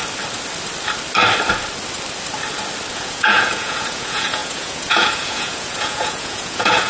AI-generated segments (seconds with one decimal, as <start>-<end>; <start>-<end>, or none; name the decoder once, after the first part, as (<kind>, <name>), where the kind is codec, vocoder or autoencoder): 2.9-6.9 (vocoder, Vocos)